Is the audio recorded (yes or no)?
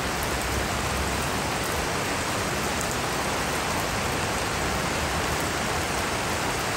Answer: yes